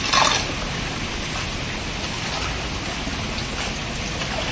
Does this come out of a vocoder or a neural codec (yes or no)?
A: no